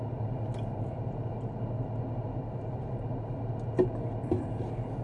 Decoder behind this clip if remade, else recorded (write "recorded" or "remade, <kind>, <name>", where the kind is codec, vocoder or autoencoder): recorded